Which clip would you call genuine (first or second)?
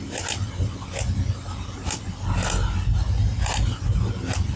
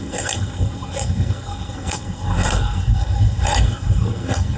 first